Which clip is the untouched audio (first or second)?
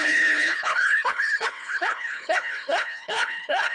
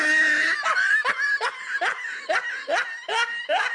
second